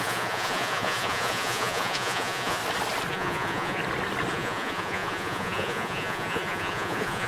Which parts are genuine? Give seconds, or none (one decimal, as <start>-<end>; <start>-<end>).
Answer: 2.6-3.1; 3.8-4.3